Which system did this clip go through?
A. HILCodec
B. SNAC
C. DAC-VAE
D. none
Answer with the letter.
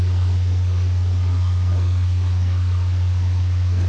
B